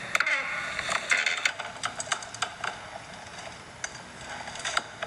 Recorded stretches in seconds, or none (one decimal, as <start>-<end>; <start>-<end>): 0.0-5.1